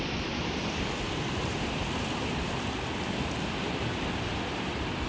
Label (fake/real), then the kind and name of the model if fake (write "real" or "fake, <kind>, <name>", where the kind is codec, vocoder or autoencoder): fake, vocoder, BigVGAN v2